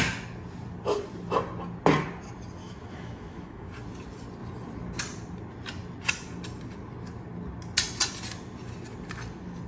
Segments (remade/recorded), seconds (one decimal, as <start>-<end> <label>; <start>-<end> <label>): 0.0-2.6 recorded; 2.6-3.7 remade; 3.7-9.7 recorded